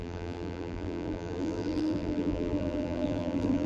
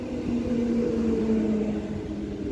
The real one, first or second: second